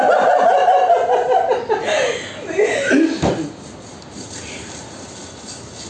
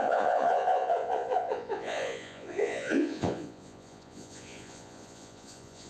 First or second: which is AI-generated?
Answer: second